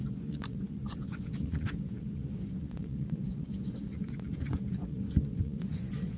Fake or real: fake